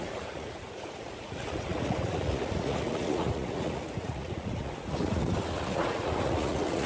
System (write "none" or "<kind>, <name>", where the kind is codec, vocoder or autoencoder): vocoder, Vocos